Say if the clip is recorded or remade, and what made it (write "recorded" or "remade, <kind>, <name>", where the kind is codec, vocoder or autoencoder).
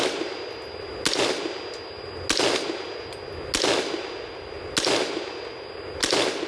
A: recorded